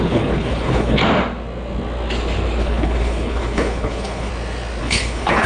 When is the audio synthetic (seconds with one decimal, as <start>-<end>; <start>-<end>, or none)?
0.0-1.0; 2.6-4.3; 4.8-5.5